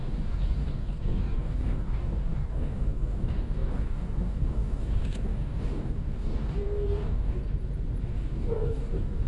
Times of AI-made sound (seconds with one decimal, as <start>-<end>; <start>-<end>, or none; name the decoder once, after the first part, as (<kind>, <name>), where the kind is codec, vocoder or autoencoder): 0.0-7.4 (codec, DAC); 8.0-9.3